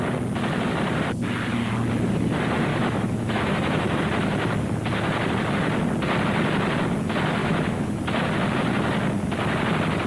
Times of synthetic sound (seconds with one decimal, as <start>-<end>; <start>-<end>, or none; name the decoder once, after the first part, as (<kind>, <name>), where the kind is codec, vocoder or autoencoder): 2.7-4.0 (autoencoder, DAC-VAE); 7.4-8.0